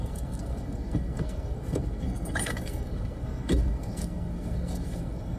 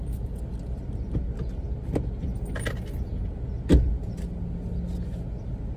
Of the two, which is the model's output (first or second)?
first